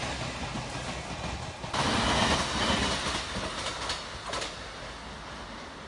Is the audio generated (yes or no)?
no